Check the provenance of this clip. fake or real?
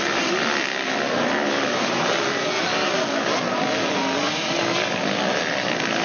real